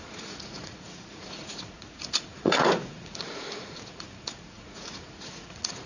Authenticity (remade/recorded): remade